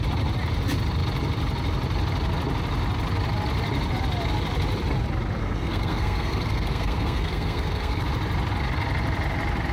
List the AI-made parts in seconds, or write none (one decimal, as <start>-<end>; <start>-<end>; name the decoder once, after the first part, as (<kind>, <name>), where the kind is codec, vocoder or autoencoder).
5.4-8.1 (codec, SNAC)